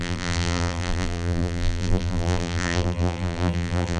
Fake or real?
fake